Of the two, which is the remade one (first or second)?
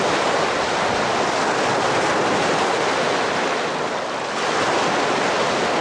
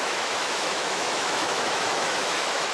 second